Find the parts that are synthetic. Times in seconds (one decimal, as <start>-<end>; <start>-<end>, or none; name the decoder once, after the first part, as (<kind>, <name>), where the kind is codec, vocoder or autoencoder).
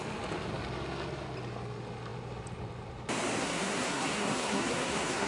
3.4-5.3 (codec, SNAC)